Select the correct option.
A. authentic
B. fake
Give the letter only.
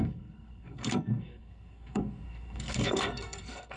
B